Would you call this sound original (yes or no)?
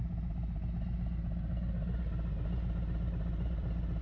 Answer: yes